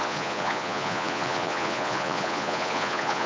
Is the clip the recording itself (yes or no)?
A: no